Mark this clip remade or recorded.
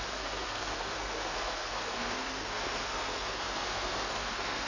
remade